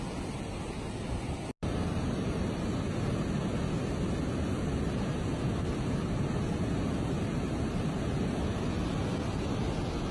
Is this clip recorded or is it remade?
recorded